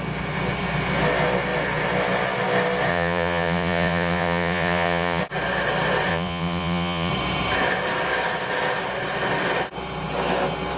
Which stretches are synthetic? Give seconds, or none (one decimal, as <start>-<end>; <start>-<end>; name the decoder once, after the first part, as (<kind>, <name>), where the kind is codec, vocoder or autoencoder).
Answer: 2.9-5.2 (vocoder, Vocos); 6.1-7.1